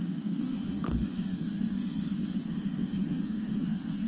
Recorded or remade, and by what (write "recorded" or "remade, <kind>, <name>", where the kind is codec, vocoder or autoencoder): remade, codec, SNAC